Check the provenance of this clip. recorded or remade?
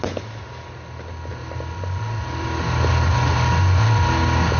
recorded